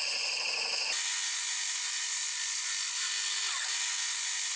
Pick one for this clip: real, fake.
real